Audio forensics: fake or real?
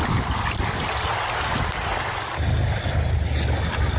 real